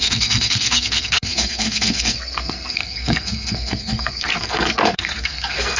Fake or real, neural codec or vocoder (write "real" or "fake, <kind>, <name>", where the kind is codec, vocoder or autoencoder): fake, codec, SNAC